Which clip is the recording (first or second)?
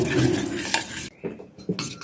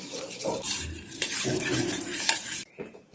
first